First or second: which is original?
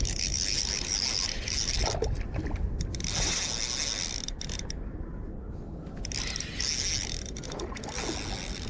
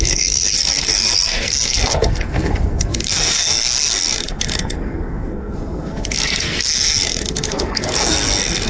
first